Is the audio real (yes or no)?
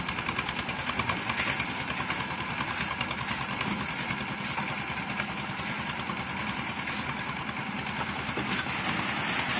yes